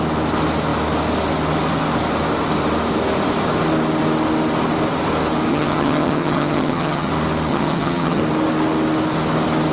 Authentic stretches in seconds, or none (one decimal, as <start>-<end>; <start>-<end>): 0.0-5.5; 7.1-7.5; 8.2-9.7